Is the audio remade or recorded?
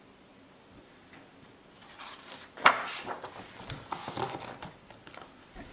remade